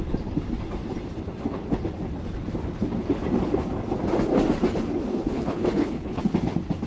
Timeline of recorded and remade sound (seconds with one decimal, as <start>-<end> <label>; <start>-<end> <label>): 0.0-5.1 recorded; 5.1-6.2 remade; 6.2-6.9 recorded

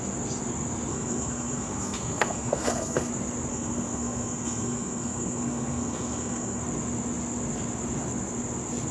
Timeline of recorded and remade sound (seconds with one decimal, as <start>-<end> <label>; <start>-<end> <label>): 0.0-0.9 recorded; 0.9-3.1 remade; 3.1-3.5 recorded; 3.5-6.6 remade; 6.6-8.9 recorded

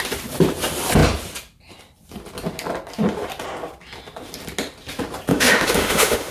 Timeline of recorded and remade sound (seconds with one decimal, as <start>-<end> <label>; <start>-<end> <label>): 0.0-5.3 recorded; 5.3-6.3 remade

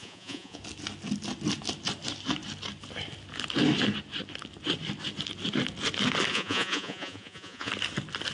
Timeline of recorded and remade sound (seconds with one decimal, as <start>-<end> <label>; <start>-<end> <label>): 0.0-0.6 remade; 0.6-6.3 recorded; 6.3-7.7 remade; 7.7-8.3 recorded

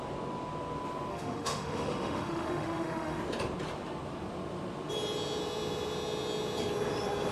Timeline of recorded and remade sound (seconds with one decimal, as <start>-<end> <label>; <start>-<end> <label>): 0.0-1.1 recorded; 1.1-3.2 remade; 3.2-7.3 recorded

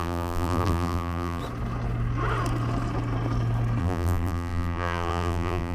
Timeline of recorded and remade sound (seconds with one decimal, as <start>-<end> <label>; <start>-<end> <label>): 0.0-1.4 remade; 1.4-3.8 recorded; 3.8-5.7 remade

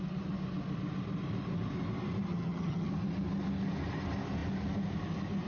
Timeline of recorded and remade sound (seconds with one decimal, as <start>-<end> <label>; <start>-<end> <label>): 0.0-2.3 recorded; 2.3-2.9 remade; 2.9-5.5 recorded

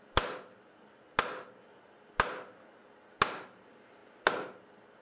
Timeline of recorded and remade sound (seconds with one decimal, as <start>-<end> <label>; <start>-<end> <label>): 0.0-5.0 recorded